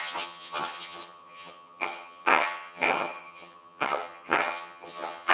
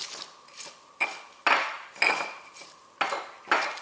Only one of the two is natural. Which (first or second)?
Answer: second